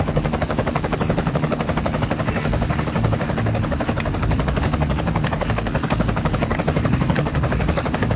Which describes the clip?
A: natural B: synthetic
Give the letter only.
B